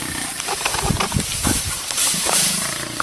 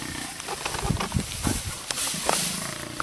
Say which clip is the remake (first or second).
first